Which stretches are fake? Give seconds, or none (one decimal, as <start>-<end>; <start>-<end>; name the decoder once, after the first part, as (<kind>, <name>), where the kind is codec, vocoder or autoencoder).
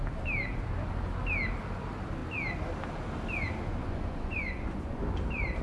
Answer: 3.8-5.0 (vocoder, Vocos)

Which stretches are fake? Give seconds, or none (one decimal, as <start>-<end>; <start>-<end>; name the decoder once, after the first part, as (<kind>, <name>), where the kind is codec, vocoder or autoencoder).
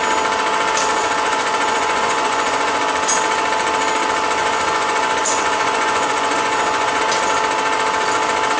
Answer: 0.9-2.8 (vocoder, Vocos); 4.4-7.0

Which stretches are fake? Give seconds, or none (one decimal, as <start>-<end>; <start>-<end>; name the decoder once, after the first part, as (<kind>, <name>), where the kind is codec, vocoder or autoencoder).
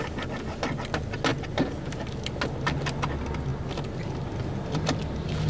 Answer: none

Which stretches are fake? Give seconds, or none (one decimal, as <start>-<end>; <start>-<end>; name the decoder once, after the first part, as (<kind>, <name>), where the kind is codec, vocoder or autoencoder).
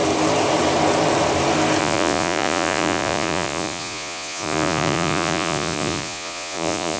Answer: 1.8-7.0 (vocoder, Vocos)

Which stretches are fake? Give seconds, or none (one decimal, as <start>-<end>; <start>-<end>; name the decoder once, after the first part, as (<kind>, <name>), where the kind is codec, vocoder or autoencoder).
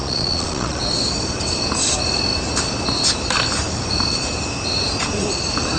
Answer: 0.0-0.8 (vocoder, Vocos)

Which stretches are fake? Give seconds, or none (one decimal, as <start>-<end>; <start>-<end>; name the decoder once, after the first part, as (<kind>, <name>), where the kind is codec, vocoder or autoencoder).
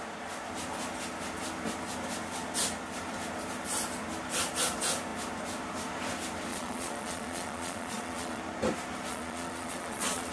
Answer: 6.5-8.4 (vocoder, Vocos); 9.1-10.3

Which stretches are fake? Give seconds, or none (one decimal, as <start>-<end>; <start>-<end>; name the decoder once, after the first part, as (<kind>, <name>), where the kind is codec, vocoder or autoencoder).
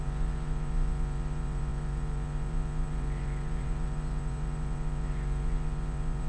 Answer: 0.0-6.3 (vocoder, Vocos)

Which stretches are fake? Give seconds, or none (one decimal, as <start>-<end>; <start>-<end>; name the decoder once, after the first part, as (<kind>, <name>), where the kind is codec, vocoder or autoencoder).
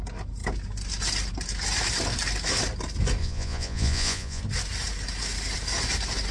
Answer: 3.2-4.4 (vocoder, Vocos)